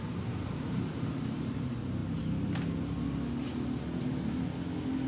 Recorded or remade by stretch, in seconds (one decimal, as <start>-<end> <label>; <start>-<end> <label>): 0.0-2.0 remade; 2.0-5.1 recorded